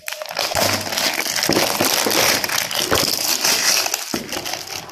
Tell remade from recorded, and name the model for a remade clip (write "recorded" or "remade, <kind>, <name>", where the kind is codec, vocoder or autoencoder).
recorded